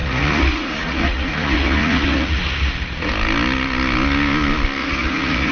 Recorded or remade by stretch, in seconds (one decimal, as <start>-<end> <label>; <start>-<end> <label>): 0.0-3.1 remade; 3.1-4.8 recorded; 4.8-5.5 remade